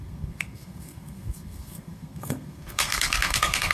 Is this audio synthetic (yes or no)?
yes